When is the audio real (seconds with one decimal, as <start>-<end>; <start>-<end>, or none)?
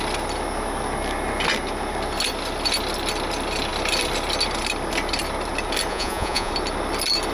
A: 0.0-5.9; 6.5-7.3